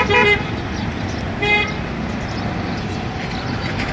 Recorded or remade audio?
recorded